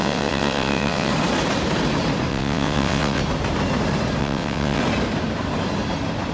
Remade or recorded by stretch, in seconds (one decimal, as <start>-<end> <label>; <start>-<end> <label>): 0.0-1.1 remade; 1.1-2.3 recorded; 2.3-3.2 remade; 3.2-4.2 recorded; 4.2-4.8 remade; 4.8-6.3 recorded

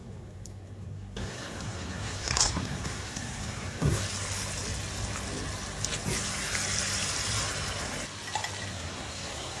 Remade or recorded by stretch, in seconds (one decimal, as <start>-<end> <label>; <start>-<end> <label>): 0.0-4.0 remade; 4.0-8.7 recorded; 8.7-9.6 remade